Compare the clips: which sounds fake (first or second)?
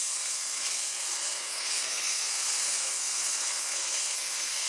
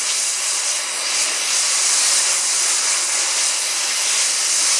first